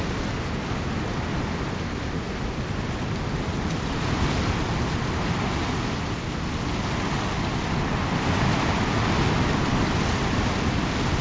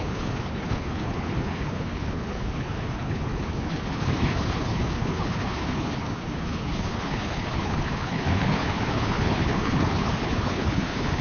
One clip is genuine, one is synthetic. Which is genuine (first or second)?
first